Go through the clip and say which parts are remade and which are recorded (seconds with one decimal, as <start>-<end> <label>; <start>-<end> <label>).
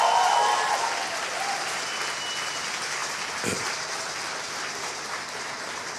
0.0-6.0 recorded